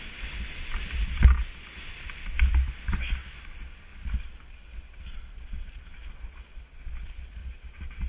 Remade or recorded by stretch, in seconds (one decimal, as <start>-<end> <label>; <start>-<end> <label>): 0.0-7.4 recorded; 7.4-8.1 remade